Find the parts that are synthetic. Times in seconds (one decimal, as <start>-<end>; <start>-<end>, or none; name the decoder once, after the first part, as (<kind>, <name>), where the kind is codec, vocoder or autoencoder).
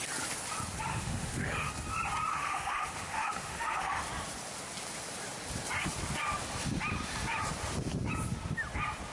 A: 0.9-1.7 (autoencoder, DAC-VAE); 2.3-4.0